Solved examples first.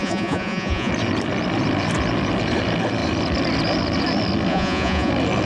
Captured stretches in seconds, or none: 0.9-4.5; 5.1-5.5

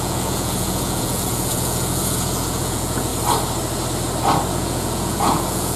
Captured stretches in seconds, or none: 3.1-4.5